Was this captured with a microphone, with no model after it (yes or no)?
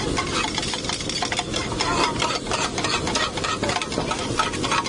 yes